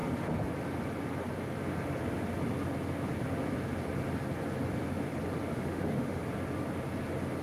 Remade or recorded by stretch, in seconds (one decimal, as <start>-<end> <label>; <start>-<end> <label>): 0.0-5.5 recorded; 5.5-6.2 remade; 6.2-7.4 recorded